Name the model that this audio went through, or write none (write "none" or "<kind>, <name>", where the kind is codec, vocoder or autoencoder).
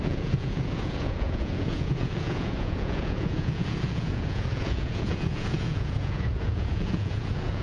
vocoder, Vocos